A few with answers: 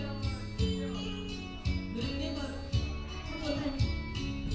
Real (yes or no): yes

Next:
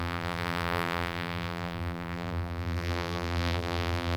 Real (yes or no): no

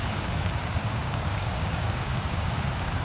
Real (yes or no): no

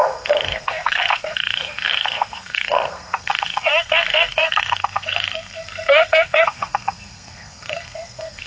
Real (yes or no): no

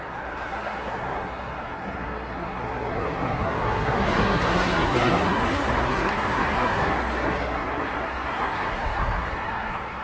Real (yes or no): no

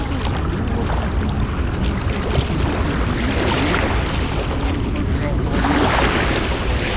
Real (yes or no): yes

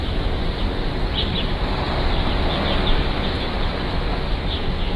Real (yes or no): yes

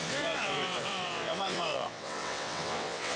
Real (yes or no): no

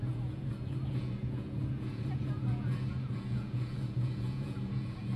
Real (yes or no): no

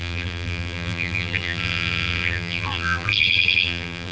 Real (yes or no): no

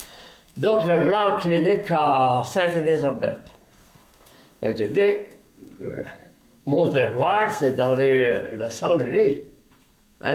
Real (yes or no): no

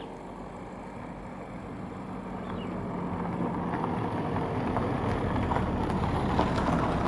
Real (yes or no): yes